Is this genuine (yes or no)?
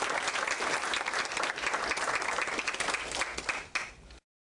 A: yes